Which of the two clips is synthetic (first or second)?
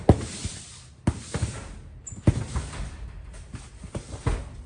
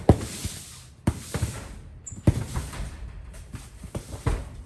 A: second